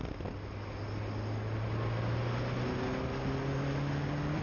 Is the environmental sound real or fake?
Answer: real